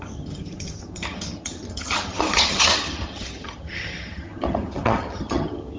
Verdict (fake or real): fake